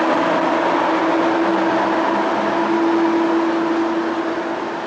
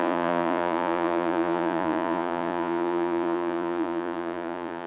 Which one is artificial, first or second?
second